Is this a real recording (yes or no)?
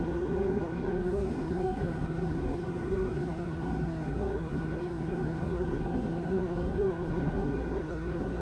no